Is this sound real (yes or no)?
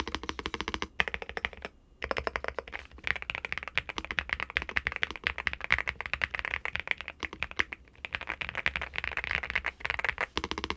yes